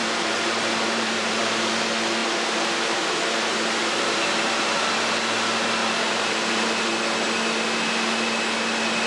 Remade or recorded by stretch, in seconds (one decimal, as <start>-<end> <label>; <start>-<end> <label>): 0.0-1.7 remade; 1.7-2.2 recorded; 2.2-4.9 remade; 4.9-5.8 recorded; 5.8-6.6 remade; 6.6-9.1 recorded